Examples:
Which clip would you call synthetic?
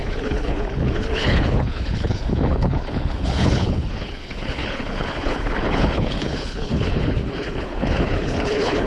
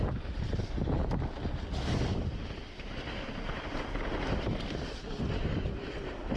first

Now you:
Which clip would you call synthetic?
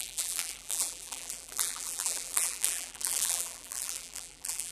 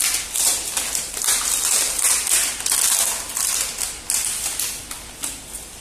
first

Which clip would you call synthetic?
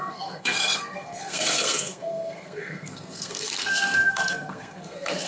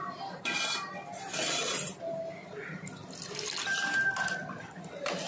first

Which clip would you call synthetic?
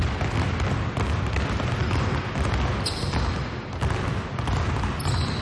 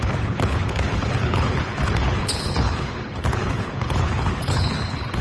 second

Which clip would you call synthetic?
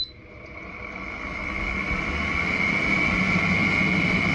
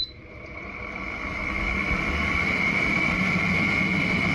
second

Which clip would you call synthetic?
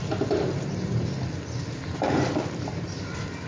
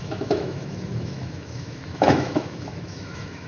second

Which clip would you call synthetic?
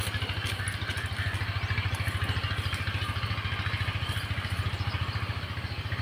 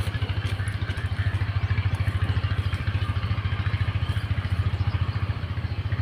second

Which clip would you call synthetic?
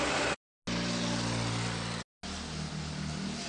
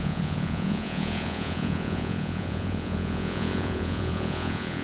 second